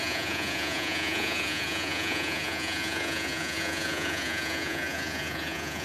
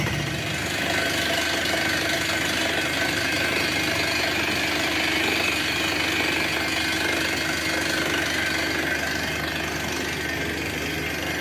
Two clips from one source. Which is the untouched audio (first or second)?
second